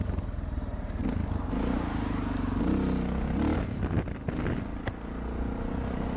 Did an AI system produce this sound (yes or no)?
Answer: no